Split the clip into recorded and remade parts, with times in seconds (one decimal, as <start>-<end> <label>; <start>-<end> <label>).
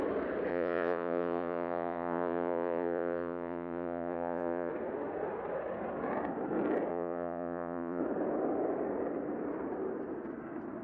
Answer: 0.0-0.5 recorded; 0.5-4.7 remade; 4.7-6.9 recorded; 6.9-8.0 remade; 8.0-10.8 recorded